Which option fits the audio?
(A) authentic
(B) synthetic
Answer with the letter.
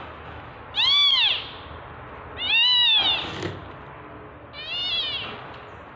A